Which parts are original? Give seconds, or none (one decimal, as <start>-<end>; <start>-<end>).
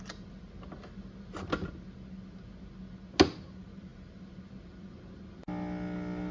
0.0-6.3